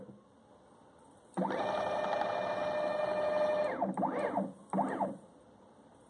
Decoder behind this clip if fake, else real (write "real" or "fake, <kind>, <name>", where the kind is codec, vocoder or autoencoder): real